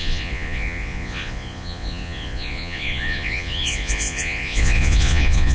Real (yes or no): no